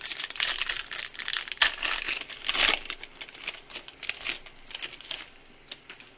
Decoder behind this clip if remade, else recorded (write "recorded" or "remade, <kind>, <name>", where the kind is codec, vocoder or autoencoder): recorded